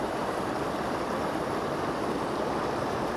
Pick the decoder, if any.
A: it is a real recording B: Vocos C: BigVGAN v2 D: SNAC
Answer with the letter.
A